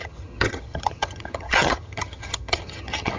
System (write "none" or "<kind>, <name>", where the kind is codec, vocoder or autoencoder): vocoder, HiFi-GAN